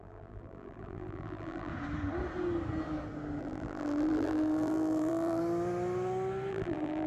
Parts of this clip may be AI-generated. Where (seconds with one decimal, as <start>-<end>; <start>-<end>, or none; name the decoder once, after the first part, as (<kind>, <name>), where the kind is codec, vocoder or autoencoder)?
0.0-1.7 (vocoder, BigVGAN v2); 3.4-5.4; 6.5-7.1